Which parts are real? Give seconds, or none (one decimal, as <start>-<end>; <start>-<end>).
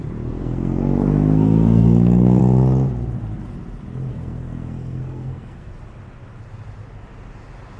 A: 0.0-0.4; 2.4-4.1; 5.7-7.8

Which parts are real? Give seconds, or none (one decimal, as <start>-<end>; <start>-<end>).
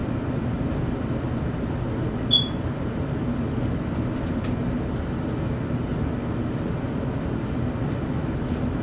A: 0.0-8.8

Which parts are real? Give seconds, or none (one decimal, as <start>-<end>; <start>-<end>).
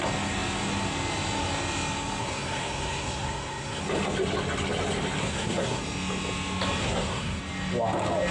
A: 0.0-2.2; 3.8-5.2; 5.8-6.8; 7.4-8.3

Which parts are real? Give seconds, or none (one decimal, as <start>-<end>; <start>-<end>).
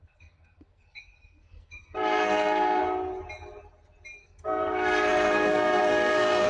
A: 2.8-4.2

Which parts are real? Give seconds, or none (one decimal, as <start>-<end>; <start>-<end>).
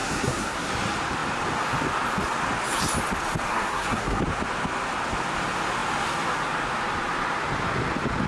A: 0.7-3.5; 4.2-8.3